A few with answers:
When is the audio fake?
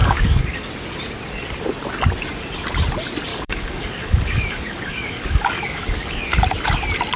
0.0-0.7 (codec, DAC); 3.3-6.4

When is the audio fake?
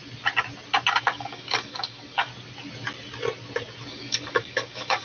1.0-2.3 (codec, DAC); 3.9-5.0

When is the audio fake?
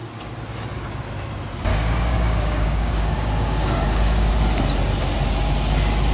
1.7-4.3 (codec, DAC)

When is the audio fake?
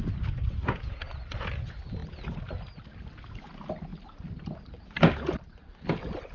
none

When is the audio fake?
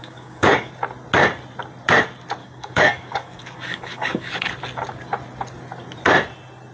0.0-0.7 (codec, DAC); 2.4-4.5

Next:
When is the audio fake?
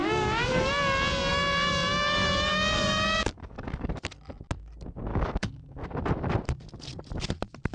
0.0-0.7 (codec, DAC); 1.3-3.9; 5.1-5.8